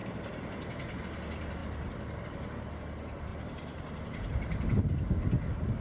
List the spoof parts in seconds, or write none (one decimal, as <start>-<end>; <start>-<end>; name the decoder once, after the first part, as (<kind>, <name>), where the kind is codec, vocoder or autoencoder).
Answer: 0.0-1.0 (vocoder, BigVGAN v2); 3.3-5.1